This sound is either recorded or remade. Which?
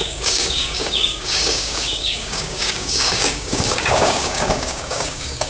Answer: remade